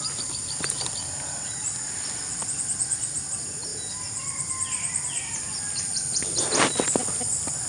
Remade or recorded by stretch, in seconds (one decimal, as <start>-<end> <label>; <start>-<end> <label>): 0.0-7.7 recorded